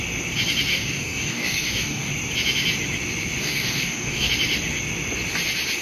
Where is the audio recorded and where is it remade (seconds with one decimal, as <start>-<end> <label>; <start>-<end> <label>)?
0.0-0.7 recorded; 0.7-2.1 remade; 2.1-3.4 recorded; 3.4-4.3 remade; 4.3-5.8 recorded